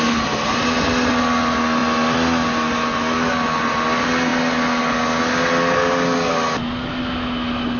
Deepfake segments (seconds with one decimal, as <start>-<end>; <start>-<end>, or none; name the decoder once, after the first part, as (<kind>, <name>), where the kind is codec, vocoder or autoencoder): none